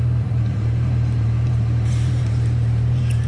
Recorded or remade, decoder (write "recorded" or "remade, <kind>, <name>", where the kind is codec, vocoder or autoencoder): remade, vocoder, BigVGAN v2